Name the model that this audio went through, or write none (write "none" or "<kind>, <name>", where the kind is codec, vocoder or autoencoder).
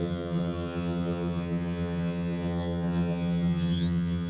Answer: vocoder, HiFi-GAN